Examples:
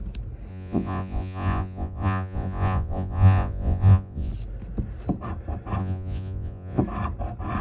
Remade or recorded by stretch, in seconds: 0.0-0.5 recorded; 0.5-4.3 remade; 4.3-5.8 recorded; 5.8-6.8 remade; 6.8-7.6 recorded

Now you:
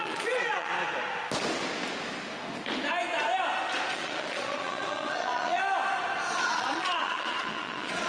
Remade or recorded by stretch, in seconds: 0.0-0.7 remade; 0.7-3.9 recorded; 3.9-5.6 remade; 5.6-6.4 recorded; 6.4-8.1 remade

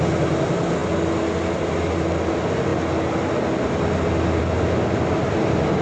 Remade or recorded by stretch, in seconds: 0.0-5.8 recorded